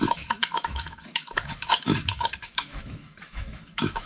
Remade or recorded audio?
remade